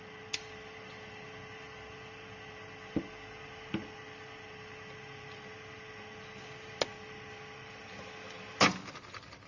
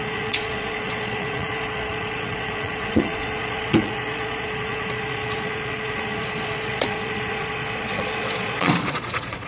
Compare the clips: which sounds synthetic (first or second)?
second